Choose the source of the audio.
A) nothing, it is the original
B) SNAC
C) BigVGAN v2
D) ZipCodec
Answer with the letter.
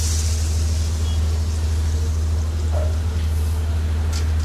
A